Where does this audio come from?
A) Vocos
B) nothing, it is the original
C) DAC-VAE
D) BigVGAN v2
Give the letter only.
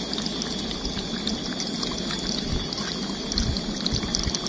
B